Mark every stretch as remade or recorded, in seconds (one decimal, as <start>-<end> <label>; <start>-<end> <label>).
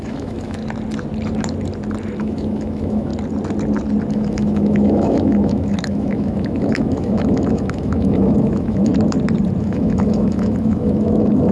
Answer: 0.0-0.6 remade; 0.6-2.2 recorded; 2.2-3.1 remade; 3.1-4.1 recorded; 4.1-8.9 remade; 8.9-9.6 recorded; 9.6-11.5 remade